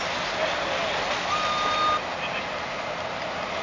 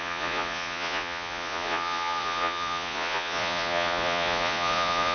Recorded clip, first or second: first